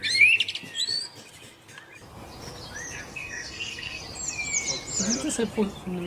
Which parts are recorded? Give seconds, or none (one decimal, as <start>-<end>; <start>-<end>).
0.0-3.1; 4.0-6.1